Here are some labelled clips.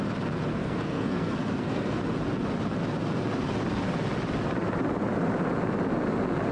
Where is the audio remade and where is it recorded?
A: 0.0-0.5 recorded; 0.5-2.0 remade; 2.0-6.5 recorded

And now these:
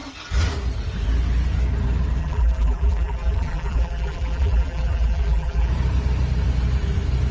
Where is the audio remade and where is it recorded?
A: 0.0-2.2 recorded; 2.2-5.7 remade; 5.7-7.3 recorded

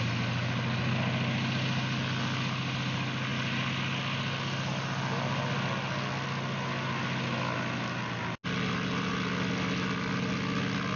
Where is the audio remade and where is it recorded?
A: 0.0-11.0 recorded

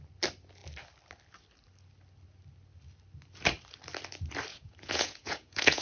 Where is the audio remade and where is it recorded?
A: 0.0-4.5 recorded; 4.5-5.8 remade

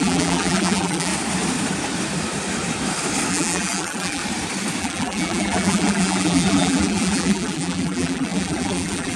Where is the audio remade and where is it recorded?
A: 0.0-1.1 remade; 1.1-3.3 recorded; 3.3-4.2 remade; 4.2-4.8 recorded; 4.8-9.2 remade